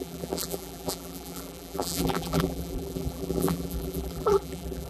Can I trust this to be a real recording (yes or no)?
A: no